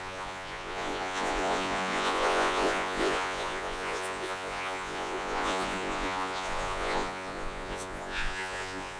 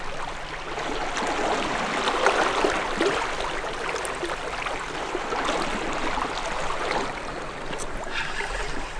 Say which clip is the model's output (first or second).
first